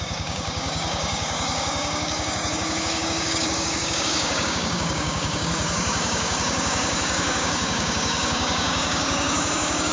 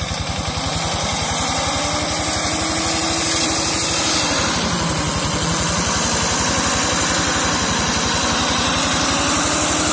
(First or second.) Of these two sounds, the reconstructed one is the first